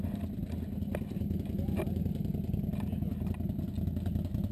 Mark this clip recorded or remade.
recorded